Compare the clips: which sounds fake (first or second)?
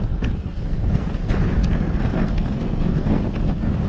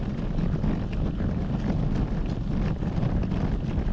first